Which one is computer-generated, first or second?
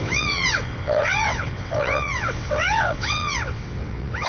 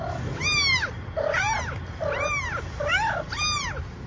first